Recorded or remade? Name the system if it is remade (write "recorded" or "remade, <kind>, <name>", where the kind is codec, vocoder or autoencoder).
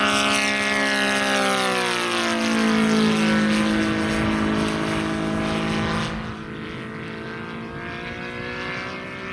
recorded